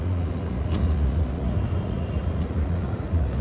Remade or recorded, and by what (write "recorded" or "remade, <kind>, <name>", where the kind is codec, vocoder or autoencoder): remade, vocoder, Vocos